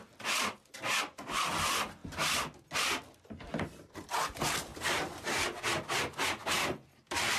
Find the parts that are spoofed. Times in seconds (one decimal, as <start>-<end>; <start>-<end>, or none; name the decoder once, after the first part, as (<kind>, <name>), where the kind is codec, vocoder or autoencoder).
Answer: none